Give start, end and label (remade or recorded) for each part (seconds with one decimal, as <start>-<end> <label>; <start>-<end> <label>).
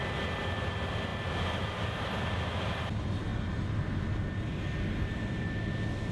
0.0-6.1 recorded